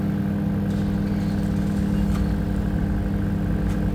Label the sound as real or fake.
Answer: real